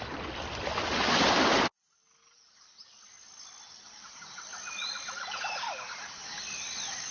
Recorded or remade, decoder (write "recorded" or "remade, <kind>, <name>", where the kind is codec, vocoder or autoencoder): recorded